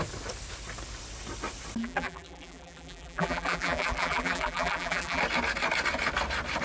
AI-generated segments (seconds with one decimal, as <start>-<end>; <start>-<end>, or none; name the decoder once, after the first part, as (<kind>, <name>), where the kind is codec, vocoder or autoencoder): 1.8-5.2 (vocoder, BigVGAN v2)